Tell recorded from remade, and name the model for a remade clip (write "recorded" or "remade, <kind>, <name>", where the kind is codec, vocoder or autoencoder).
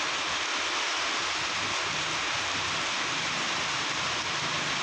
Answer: recorded